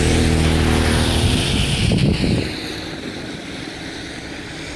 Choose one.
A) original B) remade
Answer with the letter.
A